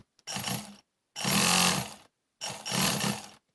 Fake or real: real